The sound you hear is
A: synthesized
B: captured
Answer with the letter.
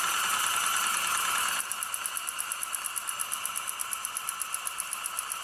B